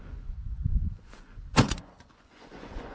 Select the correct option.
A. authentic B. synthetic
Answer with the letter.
B